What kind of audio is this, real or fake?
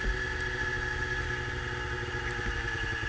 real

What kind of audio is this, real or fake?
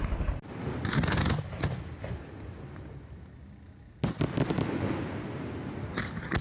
real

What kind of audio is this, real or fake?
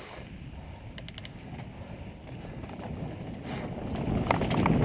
real